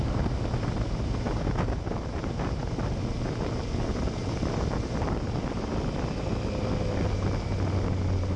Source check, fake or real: real